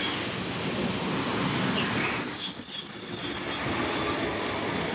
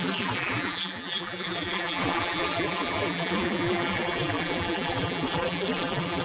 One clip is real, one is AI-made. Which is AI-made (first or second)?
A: second